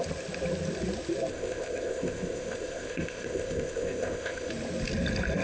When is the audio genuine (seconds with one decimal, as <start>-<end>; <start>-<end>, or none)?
0.0-1.3; 4.5-5.4